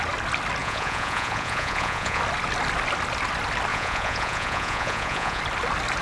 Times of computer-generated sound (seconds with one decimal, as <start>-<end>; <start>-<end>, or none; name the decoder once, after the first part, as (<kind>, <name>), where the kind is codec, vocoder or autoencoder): 0.6-2.2 (vocoder, Vocos); 3.7-5.4